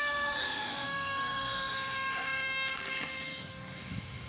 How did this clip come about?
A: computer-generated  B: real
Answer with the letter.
A